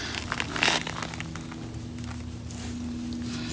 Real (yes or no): yes